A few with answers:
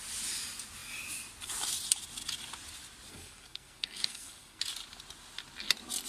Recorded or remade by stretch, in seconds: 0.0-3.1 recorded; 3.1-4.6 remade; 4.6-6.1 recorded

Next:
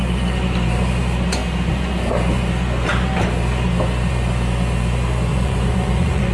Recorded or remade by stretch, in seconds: 0.0-5.3 recorded; 5.3-6.3 remade

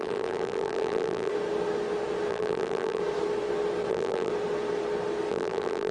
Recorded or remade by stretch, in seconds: 0.0-1.3 remade; 1.3-2.3 recorded; 2.3-3.0 remade; 3.0-3.9 recorded; 3.9-4.3 remade; 4.3-5.3 recorded; 5.3-5.9 remade

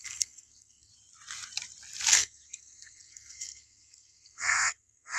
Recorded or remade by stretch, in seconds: 0.0-0.9 remade; 0.9-2.1 recorded; 2.1-5.2 remade

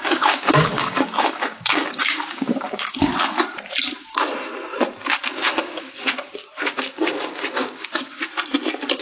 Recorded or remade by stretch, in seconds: 0.0-3.1 remade; 3.1-5.3 recorded; 5.3-8.3 remade; 8.3-9.0 recorded